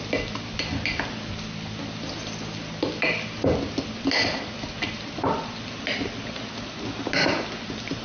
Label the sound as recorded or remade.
recorded